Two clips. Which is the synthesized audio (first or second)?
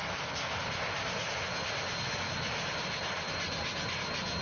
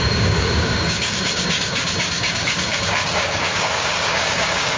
second